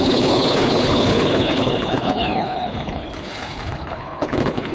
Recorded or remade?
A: remade